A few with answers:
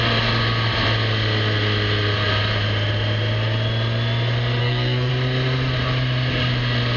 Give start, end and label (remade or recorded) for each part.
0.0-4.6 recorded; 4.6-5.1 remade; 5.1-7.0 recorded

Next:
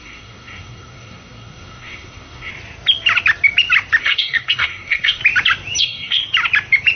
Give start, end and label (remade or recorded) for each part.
0.0-2.5 remade; 2.5-4.0 recorded; 4.0-5.2 remade; 5.2-5.8 recorded; 5.8-6.2 remade; 6.2-7.0 recorded

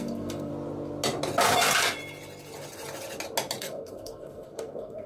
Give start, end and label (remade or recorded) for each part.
0.0-0.5 remade; 0.5-3.6 recorded; 3.6-5.1 remade

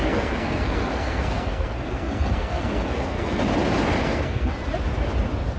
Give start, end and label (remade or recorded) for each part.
0.0-3.4 remade; 3.4-4.0 recorded; 4.0-4.5 remade; 4.5-5.6 recorded

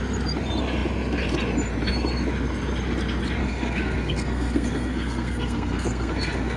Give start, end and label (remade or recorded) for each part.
0.0-3.4 recorded; 3.4-6.6 remade